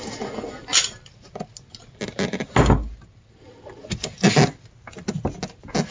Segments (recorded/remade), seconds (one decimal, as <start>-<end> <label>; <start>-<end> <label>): 0.0-5.9 recorded